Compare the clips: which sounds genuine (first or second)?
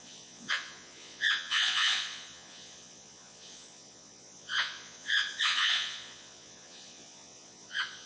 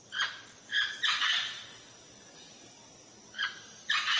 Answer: second